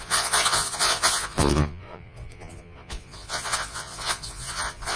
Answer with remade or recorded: remade